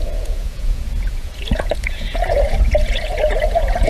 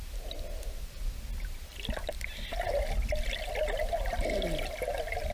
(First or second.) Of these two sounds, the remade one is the first